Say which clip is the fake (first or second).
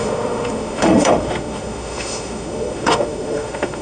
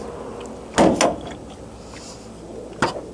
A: first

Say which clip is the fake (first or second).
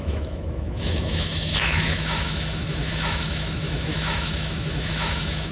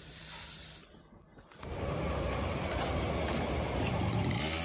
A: first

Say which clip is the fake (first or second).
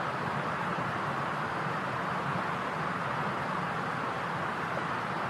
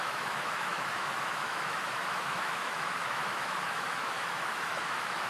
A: second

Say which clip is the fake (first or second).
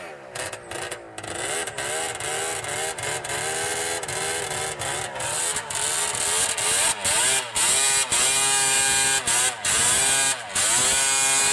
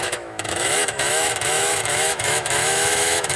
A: second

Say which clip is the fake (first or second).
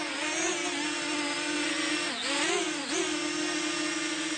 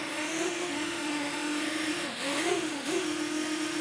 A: second